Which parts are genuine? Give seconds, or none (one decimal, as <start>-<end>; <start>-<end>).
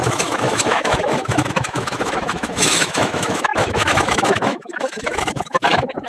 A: none